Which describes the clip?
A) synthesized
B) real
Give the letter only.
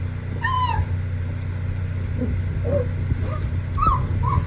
B